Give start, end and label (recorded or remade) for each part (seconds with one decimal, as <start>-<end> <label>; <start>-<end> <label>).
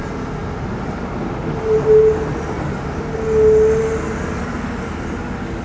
0.0-5.6 recorded